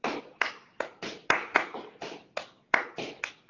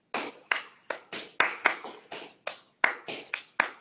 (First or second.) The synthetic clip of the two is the first